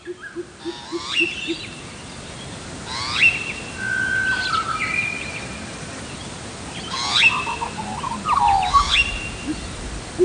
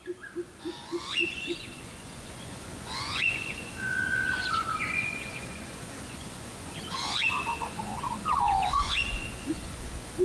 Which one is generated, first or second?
second